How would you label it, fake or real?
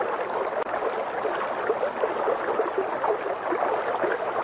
real